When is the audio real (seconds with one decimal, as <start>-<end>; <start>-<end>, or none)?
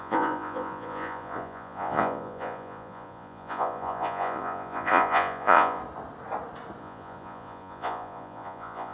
5.8-6.8